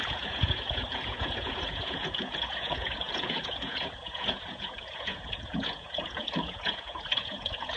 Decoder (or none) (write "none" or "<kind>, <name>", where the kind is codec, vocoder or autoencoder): vocoder, Vocos